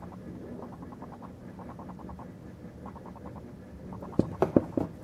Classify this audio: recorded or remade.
recorded